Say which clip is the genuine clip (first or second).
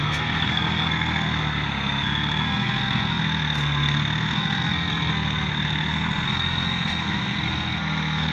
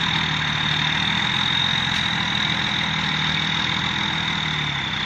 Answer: second